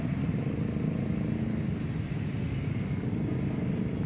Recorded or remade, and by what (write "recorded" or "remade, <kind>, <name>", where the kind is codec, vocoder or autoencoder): recorded